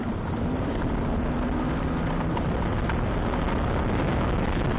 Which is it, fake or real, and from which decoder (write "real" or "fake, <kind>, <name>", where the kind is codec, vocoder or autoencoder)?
real